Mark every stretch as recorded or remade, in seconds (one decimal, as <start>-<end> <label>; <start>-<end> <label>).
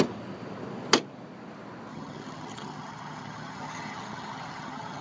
0.0-1.9 recorded; 1.9-5.0 remade